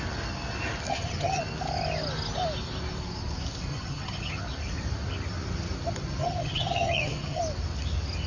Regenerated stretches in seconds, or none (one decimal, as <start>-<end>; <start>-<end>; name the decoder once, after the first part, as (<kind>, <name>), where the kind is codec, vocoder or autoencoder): 0.9-1.4 (vocoder, HiFi-GAN); 3.7-4.4; 6.2-7.4